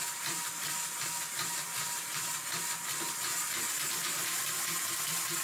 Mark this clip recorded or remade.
recorded